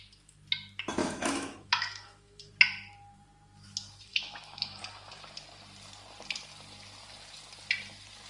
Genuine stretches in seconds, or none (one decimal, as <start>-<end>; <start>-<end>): 0.0-1.0; 2.5-4.1; 4.8-8.3